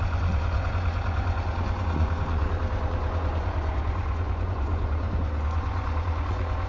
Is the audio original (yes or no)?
no